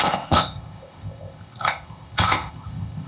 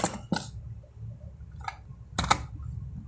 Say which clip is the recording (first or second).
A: second